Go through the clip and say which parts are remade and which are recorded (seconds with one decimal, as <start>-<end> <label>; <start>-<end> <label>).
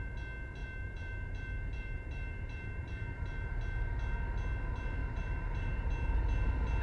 0.0-0.6 recorded; 0.6-3.5 remade; 3.5-5.0 recorded; 5.0-5.9 remade; 5.9-6.8 recorded